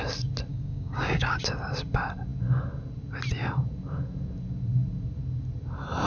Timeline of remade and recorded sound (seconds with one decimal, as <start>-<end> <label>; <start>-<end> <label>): 0.0-0.5 recorded; 0.5-1.4 remade; 1.4-6.1 recorded